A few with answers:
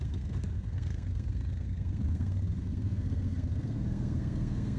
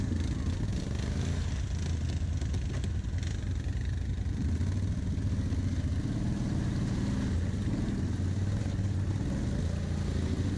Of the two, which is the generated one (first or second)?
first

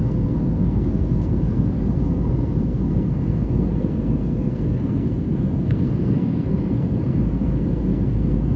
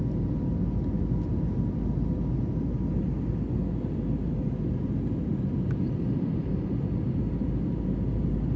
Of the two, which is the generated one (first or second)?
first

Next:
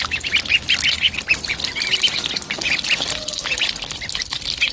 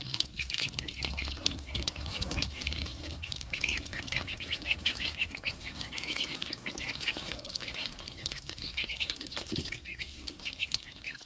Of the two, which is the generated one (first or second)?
second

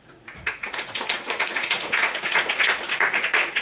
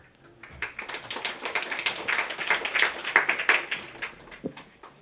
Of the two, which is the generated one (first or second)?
first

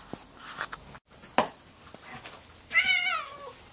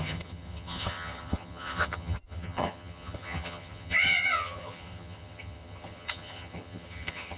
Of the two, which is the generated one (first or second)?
second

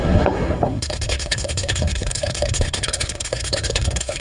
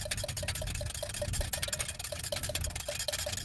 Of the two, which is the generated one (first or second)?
first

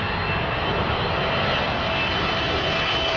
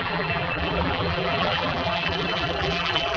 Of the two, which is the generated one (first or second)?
second